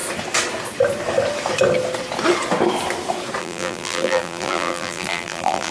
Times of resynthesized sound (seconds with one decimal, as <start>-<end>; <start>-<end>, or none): 3.4-5.7